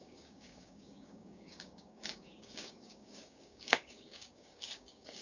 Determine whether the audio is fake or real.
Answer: fake